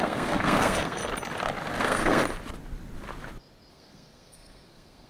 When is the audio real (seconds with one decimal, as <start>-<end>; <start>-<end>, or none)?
1.0-1.8; 2.2-3.7